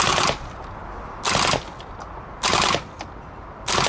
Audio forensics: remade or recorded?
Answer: recorded